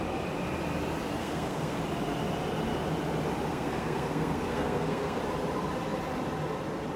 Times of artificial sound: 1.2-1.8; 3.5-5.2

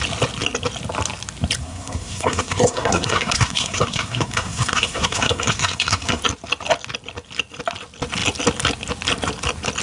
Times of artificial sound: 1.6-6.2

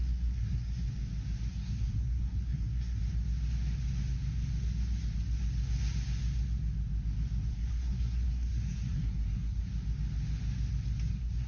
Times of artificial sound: 0.0-0.9; 1.5-3.0; 7.5-9.7; 11.1-11.5

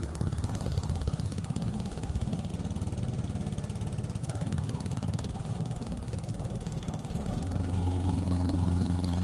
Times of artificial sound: 0.0-2.5; 4.2-9.2

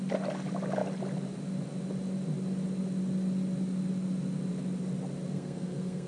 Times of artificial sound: 5.3-6.1

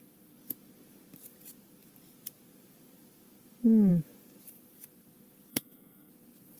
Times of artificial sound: 5.5-6.1

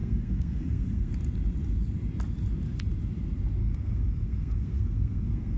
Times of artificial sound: 0.0-1.1; 3.6-5.6

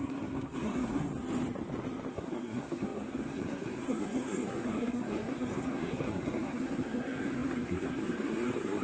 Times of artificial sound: 0.0-1.1; 2.1-8.8